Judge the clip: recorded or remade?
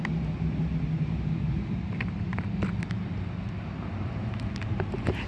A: recorded